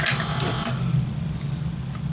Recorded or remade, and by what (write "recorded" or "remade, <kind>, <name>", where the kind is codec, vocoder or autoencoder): recorded